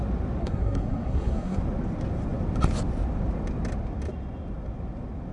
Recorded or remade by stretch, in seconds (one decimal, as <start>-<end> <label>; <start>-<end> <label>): 0.0-0.4 recorded; 0.4-1.6 remade; 1.6-5.3 recorded